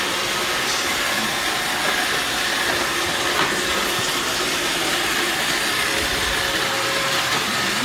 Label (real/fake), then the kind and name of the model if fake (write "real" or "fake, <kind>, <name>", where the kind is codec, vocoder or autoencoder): real